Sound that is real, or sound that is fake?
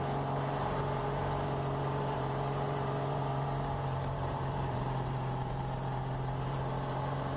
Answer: fake